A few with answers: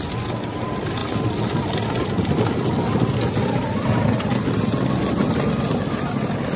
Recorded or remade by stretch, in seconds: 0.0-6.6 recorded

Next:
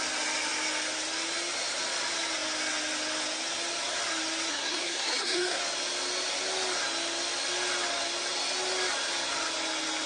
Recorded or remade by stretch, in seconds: 0.0-4.5 recorded; 4.5-5.6 remade; 5.6-10.1 recorded

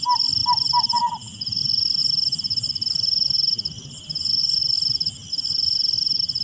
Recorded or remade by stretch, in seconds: 0.0-6.4 recorded

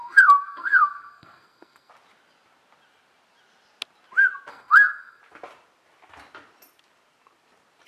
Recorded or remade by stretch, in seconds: 0.0-1.9 remade; 1.9-4.5 recorded; 4.5-5.2 remade; 5.2-7.9 recorded

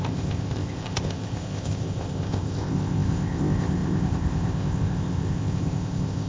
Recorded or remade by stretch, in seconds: 0.0-6.3 remade

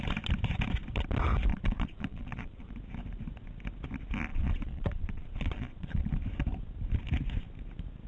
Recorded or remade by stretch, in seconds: 0.0-1.5 recorded; 1.5-2.7 remade; 2.7-4.3 recorded; 4.3-6.1 remade; 6.1-8.1 recorded

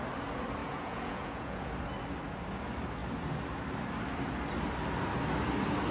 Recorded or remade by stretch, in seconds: 0.0-0.6 recorded; 0.6-1.7 remade; 1.7-5.9 recorded

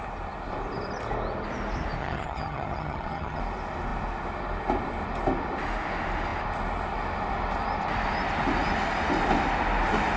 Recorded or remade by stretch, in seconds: 0.0-2.0 recorded; 2.0-3.4 remade; 3.4-10.2 recorded